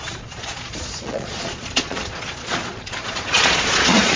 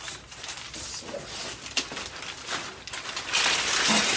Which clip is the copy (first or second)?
first